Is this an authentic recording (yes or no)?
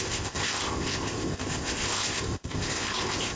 no